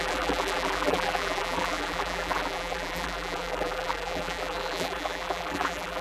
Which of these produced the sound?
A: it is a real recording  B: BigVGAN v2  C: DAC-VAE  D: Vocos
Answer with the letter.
B